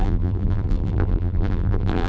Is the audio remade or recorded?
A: remade